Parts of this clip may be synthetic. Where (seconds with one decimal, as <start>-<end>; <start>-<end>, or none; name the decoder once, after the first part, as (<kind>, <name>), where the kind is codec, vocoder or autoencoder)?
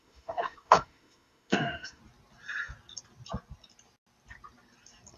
0.0-2.0 (autoencoder, DAC-VAE)